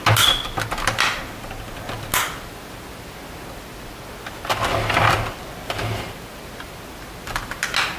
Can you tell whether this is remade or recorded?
recorded